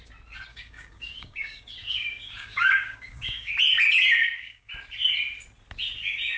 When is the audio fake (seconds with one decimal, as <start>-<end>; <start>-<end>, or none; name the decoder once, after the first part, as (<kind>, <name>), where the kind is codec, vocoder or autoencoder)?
0.5-3.5 (codec, DAC); 4.2-4.7